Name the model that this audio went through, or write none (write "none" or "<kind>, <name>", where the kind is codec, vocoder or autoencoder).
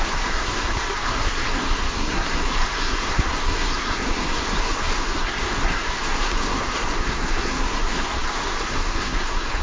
codec, SNAC